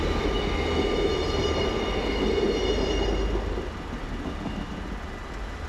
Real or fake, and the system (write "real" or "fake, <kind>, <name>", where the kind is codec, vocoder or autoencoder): real